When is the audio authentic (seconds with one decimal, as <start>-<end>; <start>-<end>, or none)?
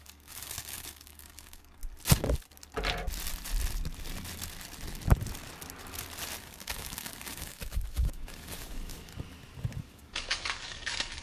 1.8-6.4; 9.1-9.8